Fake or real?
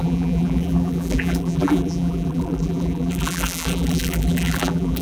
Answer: fake